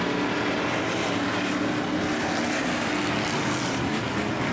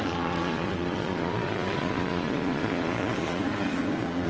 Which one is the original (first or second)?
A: first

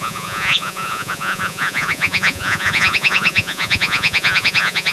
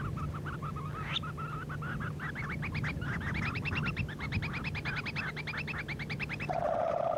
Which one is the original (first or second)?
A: second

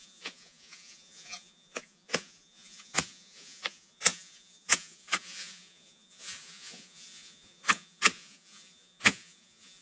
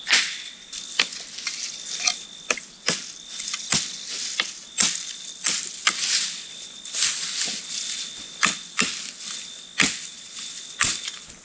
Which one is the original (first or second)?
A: second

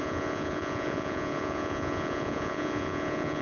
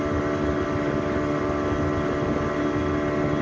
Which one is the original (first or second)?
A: second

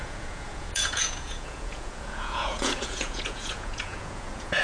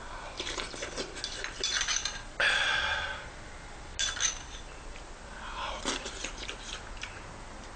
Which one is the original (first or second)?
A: second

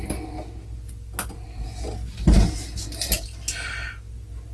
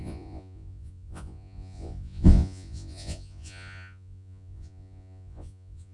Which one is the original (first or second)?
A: first